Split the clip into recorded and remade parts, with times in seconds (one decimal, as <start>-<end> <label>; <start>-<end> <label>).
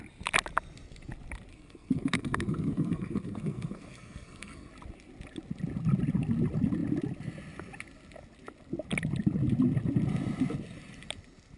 0.0-1.5 recorded; 1.5-4.7 remade; 4.7-11.6 recorded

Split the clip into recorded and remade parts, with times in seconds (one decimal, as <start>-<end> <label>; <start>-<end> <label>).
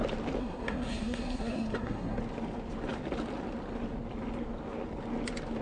0.0-0.4 recorded; 0.4-2.2 remade; 2.2-5.6 recorded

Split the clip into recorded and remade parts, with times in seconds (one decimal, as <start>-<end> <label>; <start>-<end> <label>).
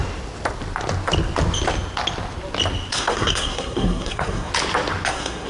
0.0-2.9 recorded; 2.9-4.5 remade; 4.5-5.1 recorded; 5.1-5.5 remade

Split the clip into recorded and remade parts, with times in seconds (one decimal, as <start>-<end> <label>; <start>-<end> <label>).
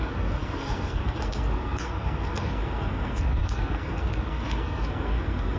0.0-5.6 remade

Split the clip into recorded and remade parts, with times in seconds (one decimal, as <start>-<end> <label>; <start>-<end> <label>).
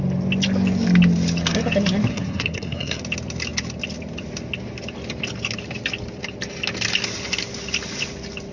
0.0-2.1 recorded; 2.1-3.0 remade; 3.0-8.5 recorded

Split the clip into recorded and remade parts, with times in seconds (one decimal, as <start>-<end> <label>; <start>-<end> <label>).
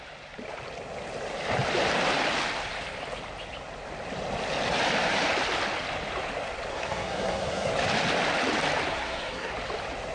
0.0-6.7 recorded; 6.7-7.7 remade; 7.7-8.9 recorded; 8.9-9.5 remade; 9.5-10.1 recorded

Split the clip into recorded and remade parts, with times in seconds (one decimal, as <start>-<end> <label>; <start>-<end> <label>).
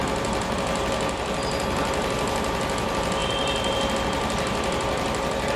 0.0-5.6 recorded